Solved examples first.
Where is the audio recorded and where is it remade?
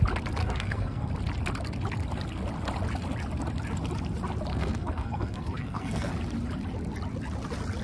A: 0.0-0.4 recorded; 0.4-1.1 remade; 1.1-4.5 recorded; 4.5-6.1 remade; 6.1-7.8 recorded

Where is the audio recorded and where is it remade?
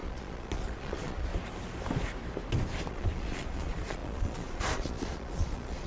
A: 0.0-1.3 remade; 1.3-2.9 recorded; 2.9-5.9 remade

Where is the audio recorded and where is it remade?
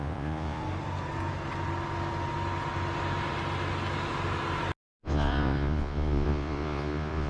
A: 0.0-0.6 remade; 0.6-5.0 recorded; 5.0-7.3 remade